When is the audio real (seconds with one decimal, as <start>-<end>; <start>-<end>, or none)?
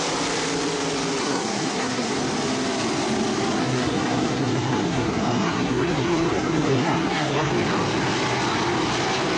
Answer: 0.0-1.2; 2.1-3.6; 7.5-9.4